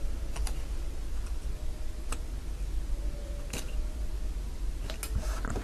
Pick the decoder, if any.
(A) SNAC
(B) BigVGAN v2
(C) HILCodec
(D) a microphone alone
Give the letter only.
D